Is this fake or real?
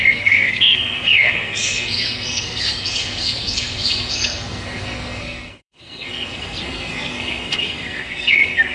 fake